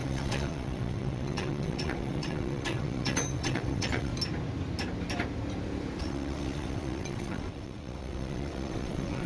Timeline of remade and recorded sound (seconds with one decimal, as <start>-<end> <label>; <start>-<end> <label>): 0.0-4.1 remade; 4.1-6.0 recorded; 6.0-9.3 remade